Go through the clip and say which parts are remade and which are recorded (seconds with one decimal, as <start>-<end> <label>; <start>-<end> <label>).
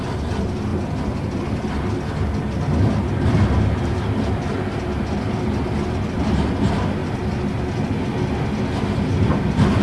0.0-9.8 recorded